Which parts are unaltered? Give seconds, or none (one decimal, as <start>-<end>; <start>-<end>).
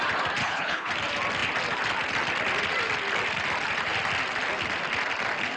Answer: 0.0-0.4; 0.9-5.6